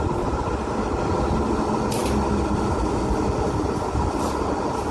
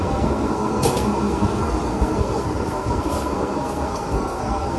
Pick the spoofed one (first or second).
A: second